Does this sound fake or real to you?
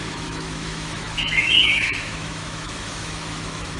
fake